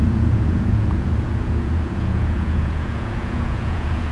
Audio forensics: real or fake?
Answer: fake